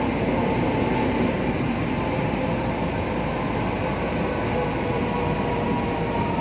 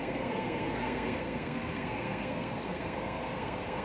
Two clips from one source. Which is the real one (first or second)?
first